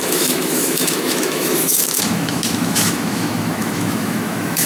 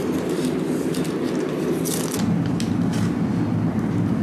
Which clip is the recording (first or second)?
second